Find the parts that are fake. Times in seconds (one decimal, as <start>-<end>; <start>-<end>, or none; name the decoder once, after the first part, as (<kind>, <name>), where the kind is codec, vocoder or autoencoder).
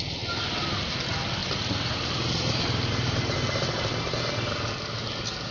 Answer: 1.4-4.7 (vocoder, BigVGAN v2)